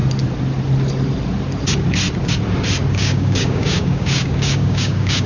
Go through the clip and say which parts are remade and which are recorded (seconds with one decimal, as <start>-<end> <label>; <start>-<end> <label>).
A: 0.0-2.9 recorded; 2.9-5.3 remade